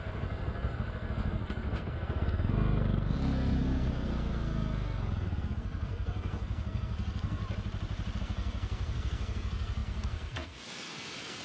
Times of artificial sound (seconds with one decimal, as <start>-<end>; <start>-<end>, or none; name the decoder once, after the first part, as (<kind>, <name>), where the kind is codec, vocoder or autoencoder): 0.0-7.4 (codec, SNAC); 8.2-11.4